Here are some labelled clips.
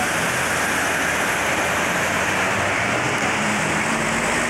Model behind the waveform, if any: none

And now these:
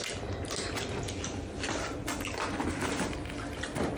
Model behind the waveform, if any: none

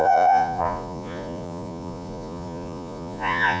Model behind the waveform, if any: vocoder, Vocos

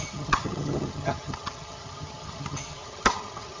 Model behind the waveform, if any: vocoder, HiFi-GAN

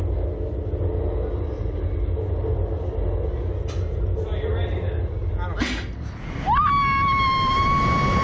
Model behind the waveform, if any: none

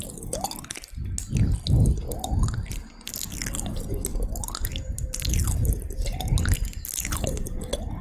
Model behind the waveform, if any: none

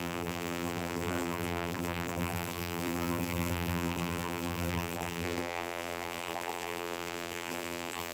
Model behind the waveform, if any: vocoder, BigVGAN v2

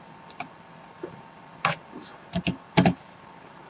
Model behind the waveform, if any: none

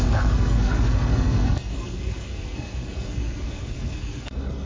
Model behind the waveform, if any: codec, SNAC